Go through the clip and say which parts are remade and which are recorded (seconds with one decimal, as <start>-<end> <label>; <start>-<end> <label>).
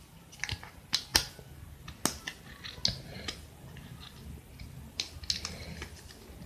0.0-6.5 recorded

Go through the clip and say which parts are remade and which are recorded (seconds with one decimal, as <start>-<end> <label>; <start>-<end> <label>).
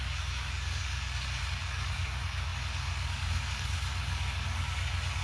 0.0-5.2 remade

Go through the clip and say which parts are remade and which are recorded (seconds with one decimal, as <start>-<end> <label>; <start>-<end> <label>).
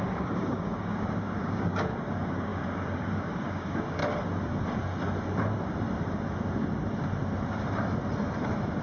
0.0-4.0 remade; 4.0-8.8 recorded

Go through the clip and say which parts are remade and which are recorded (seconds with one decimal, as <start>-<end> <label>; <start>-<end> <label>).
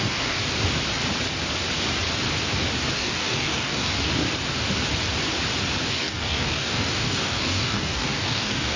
0.0-0.4 remade; 0.4-2.9 recorded; 2.9-4.1 remade; 4.1-5.9 recorded; 5.9-8.8 remade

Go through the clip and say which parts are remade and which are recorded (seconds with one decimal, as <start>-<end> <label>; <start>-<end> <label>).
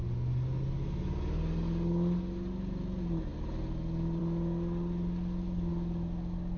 0.0-6.6 recorded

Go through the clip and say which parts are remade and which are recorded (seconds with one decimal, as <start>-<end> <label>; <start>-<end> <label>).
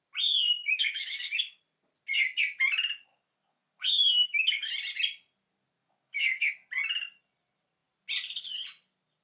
0.0-0.6 recorded; 0.6-1.6 remade; 1.6-3.1 recorded; 3.1-4.7 remade; 4.7-5.8 recorded; 5.8-6.5 remade; 6.5-9.2 recorded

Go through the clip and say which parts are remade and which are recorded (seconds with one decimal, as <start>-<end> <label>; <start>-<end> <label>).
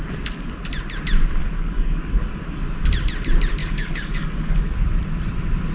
0.0-1.4 recorded; 1.4-2.1 remade; 2.1-3.6 recorded; 3.6-4.8 remade; 4.8-5.7 recorded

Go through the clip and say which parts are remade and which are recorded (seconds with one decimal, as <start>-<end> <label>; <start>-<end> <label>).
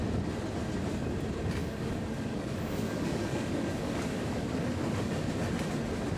0.0-1.6 recorded; 1.6-5.3 remade; 5.3-6.2 recorded